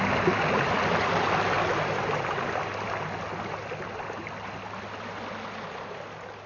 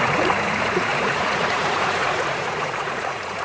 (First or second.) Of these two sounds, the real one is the first